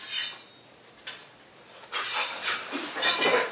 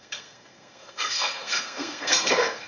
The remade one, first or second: second